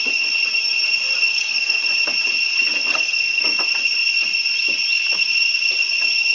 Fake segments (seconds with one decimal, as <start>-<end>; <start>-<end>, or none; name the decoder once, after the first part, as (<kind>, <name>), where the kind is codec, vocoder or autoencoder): 1.3-1.8 (codec, SNAC); 2.9-3.6